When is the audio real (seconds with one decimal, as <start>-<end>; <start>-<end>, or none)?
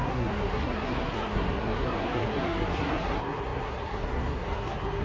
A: none